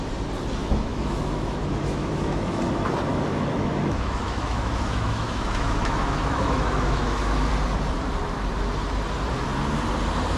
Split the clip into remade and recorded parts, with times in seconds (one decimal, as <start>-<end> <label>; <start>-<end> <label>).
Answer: 0.0-0.6 recorded; 0.6-2.6 remade; 2.6-3.1 recorded; 3.1-7.5 remade; 7.5-10.4 recorded